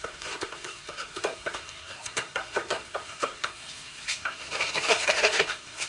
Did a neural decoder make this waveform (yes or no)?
yes